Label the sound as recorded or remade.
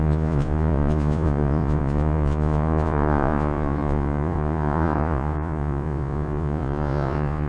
remade